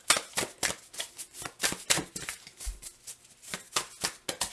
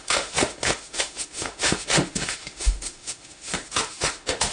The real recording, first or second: first